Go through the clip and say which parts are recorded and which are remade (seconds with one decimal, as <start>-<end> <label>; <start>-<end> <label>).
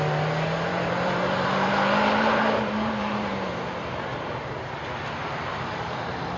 0.0-0.7 recorded; 0.7-4.5 remade; 4.5-5.5 recorded; 5.5-6.4 remade